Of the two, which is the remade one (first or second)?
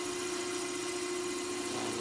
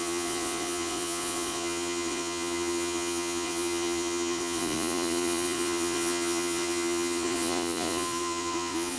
second